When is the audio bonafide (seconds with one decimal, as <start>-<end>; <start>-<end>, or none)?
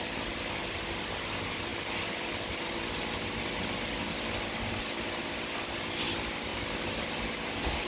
0.0-7.9